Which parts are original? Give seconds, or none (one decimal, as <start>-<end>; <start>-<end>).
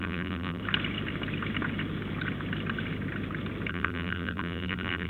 0.6-3.7